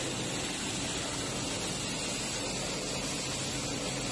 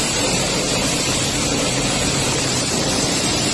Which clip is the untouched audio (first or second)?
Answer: first